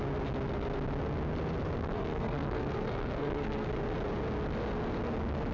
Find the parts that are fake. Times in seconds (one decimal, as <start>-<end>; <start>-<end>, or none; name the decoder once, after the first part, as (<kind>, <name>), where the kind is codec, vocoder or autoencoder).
1.8-3.7 (codec, SNAC)